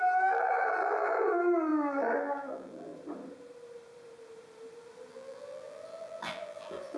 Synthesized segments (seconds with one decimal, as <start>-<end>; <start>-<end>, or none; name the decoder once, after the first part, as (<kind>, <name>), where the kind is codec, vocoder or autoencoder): 0.0-2.9 (vocoder, BigVGAN v2); 5.1-7.0

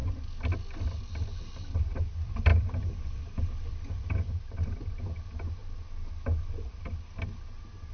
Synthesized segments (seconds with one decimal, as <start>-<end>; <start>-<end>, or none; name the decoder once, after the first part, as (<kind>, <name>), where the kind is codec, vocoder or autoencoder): 1.0-5.6 (vocoder, BigVGAN v2)

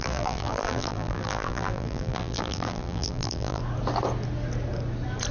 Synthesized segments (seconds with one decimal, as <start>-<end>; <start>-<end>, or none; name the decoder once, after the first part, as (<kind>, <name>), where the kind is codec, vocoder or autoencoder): 0.0-3.6 (vocoder, BigVGAN v2)

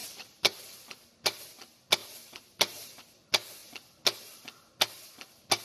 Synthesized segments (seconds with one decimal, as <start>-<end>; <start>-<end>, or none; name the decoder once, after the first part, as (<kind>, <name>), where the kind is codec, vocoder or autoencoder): 0.0-1.4 (vocoder, BigVGAN v2); 2.0-3.0

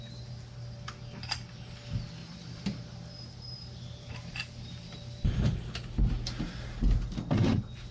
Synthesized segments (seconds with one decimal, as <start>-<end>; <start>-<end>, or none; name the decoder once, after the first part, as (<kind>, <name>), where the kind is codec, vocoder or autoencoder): 2.2-4.7 (vocoder, BigVGAN v2)